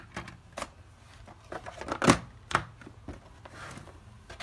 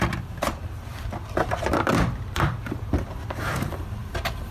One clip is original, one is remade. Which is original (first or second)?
first